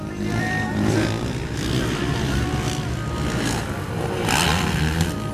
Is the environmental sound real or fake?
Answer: real